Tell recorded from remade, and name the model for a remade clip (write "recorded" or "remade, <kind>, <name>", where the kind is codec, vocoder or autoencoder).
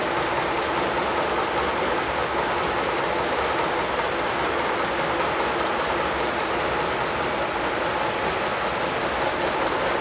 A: recorded